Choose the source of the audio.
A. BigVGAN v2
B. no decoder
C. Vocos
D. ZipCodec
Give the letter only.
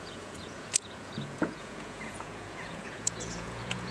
C